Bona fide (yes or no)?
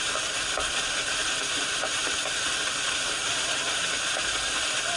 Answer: no